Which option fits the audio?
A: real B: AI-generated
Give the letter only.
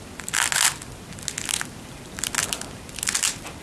A